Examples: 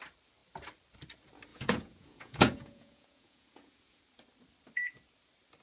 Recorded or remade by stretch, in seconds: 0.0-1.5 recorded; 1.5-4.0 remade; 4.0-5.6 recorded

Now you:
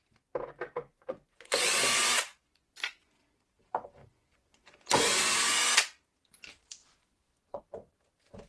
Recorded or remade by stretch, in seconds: 0.0-0.8 recorded; 0.8-3.2 remade; 3.2-4.0 recorded; 4.0-5.3 remade; 5.3-6.8 recorded; 6.8-7.6 remade; 7.6-8.5 recorded

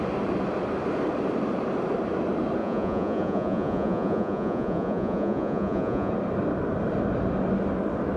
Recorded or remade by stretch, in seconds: 0.0-2.6 recorded; 2.6-6.1 remade; 6.1-8.2 recorded

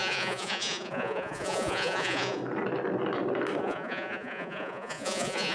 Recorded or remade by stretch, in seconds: 0.0-2.4 remade; 2.4-3.6 recorded; 3.6-5.5 remade

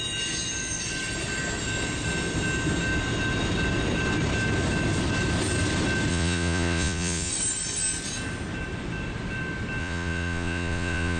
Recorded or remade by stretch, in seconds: 0.0-6.1 recorded; 6.1-7.3 remade; 7.3-9.8 recorded; 9.8-11.2 remade